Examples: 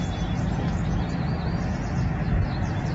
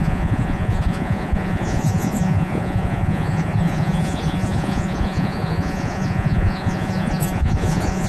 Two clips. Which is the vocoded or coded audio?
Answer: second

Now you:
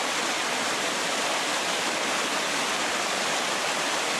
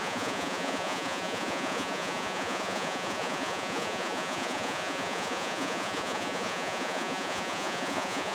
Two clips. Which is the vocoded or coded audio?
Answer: second